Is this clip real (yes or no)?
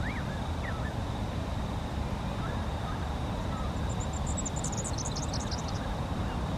yes